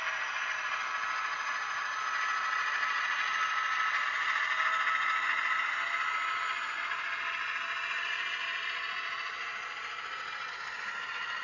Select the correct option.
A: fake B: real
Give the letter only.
B